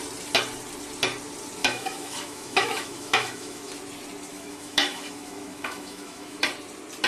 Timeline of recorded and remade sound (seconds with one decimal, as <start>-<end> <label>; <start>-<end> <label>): 0.0-1.6 recorded; 1.6-3.7 remade; 3.7-4.3 recorded; 4.3-6.4 remade; 6.4-7.1 recorded